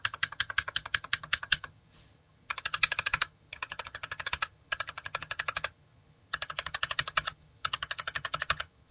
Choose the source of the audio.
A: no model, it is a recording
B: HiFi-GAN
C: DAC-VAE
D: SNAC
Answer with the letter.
B